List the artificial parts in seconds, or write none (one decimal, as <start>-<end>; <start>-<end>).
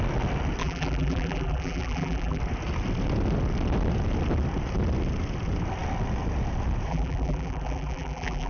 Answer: 0.6-2.4; 6.9-8.5